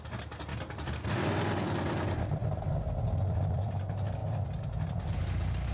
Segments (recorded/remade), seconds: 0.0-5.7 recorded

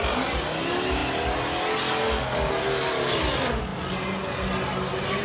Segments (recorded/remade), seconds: 0.0-5.2 recorded